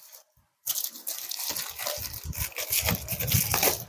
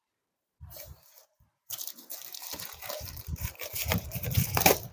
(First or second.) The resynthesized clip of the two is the second